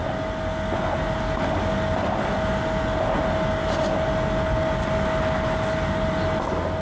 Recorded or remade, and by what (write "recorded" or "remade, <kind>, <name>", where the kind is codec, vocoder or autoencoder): recorded